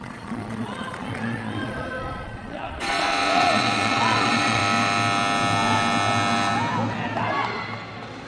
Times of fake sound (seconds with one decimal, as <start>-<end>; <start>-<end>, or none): 0.0-4.6